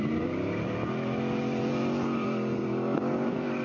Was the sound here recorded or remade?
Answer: remade